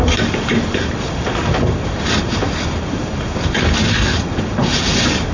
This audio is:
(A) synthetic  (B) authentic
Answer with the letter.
B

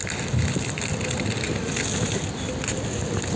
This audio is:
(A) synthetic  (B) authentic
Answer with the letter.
B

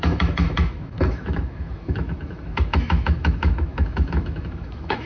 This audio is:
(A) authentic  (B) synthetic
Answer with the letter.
B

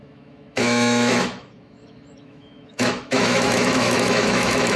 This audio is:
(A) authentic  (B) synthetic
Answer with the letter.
B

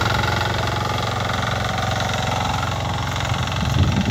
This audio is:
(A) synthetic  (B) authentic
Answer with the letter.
B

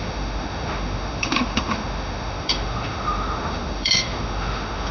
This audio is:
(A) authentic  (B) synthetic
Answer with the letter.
B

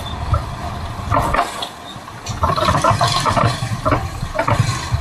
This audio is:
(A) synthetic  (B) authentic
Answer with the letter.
B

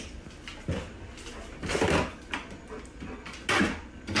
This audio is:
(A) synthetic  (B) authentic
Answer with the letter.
B